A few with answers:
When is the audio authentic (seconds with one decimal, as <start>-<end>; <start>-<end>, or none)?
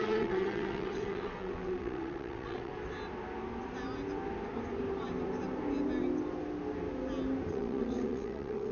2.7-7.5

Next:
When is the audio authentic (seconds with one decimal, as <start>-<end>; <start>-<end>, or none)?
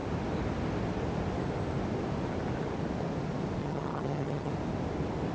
0.0-3.6; 4.5-5.3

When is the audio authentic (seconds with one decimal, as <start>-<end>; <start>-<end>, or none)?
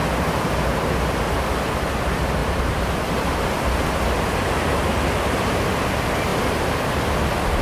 1.0-2.4; 3.7-7.6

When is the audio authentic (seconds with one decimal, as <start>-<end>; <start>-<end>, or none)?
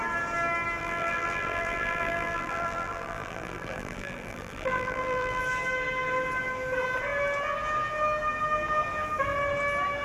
0.0-0.8; 5.4-10.0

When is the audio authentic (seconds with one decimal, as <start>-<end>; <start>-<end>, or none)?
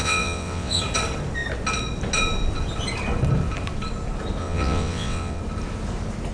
0.8-4.4; 5.4-6.3